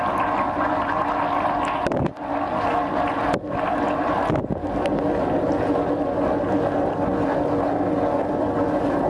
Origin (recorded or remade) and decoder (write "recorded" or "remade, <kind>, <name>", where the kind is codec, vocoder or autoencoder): recorded